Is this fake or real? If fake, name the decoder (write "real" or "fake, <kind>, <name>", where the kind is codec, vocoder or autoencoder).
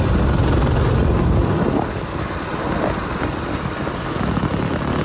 real